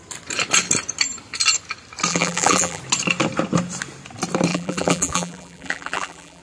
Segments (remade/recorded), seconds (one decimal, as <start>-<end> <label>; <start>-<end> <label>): 0.0-2.1 recorded; 2.1-2.8 remade; 2.8-4.5 recorded; 4.5-6.4 remade